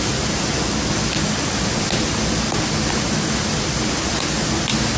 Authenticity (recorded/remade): recorded